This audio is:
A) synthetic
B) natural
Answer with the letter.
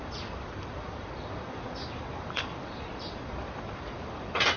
A